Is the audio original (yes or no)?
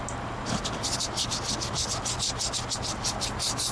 yes